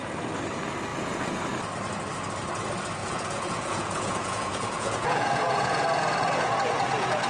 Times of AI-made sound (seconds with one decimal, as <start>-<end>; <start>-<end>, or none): 0.9-1.4; 3.0-7.3